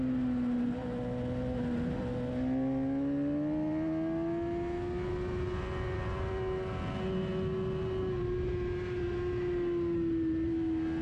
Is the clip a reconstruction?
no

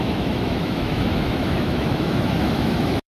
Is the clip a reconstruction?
yes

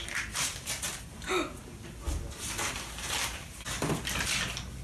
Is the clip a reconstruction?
no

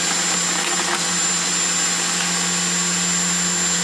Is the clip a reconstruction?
no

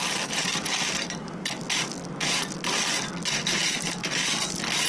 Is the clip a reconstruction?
no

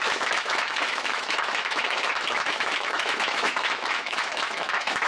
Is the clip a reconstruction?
yes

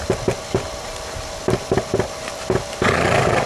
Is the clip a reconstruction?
no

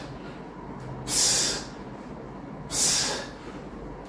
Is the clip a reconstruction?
no